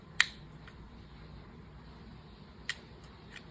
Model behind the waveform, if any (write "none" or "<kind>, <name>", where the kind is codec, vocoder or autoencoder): none